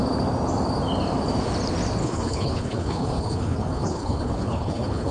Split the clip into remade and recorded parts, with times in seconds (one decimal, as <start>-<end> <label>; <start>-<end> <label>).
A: 0.0-2.0 recorded; 2.0-5.1 remade